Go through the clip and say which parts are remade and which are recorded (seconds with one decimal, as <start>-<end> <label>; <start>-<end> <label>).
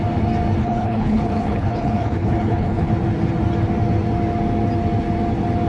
0.0-0.6 recorded; 0.6-2.9 remade; 2.9-5.7 recorded